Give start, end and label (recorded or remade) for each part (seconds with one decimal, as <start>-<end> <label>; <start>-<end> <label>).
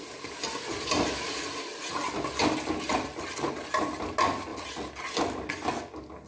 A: 0.0-6.3 recorded